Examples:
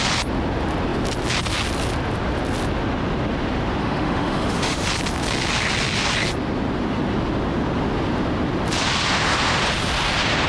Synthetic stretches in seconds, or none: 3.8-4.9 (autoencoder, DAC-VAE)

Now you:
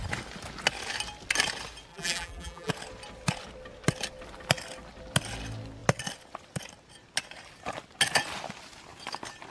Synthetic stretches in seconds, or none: 1.9-2.7 (vocoder, BigVGAN v2)

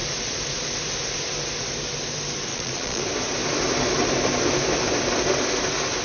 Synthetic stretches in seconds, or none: 2.5-3.0 (vocoder, Vocos)

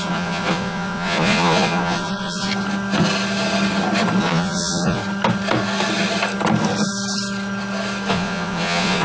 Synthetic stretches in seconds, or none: 0.0-2.5 (vocoder, Vocos); 4.2-5.0; 8.1-9.0